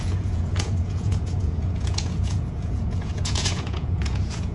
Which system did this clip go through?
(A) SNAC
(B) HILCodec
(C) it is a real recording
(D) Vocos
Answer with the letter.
D